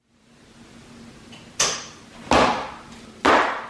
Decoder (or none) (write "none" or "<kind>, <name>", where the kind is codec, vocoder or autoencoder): none